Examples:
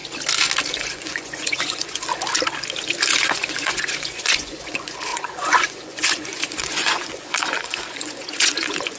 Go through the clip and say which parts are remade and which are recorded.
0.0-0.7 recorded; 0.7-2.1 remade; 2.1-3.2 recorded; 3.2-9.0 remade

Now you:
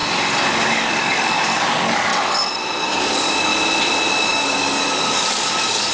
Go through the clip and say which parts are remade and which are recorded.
0.0-0.5 recorded; 0.5-2.1 remade; 2.1-2.8 recorded; 2.8-3.5 remade; 3.5-4.1 recorded; 4.1-5.9 remade

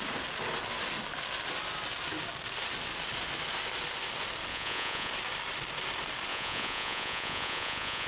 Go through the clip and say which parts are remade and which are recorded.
0.0-4.5 recorded; 4.5-5.1 remade; 5.1-6.3 recorded; 6.3-8.1 remade